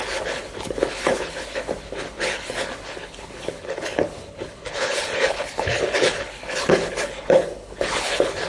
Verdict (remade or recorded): remade